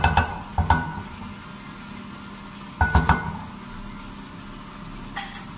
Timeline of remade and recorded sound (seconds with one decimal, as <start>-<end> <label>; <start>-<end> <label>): 0.0-5.6 recorded